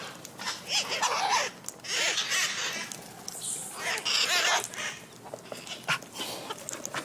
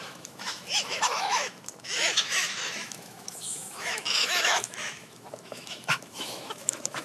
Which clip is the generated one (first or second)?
second